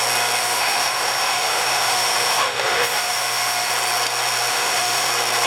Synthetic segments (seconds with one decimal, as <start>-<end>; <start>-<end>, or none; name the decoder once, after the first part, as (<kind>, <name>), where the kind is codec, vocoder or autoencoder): 0.4-3.7 (autoencoder, DAC-VAE); 4.5-5.1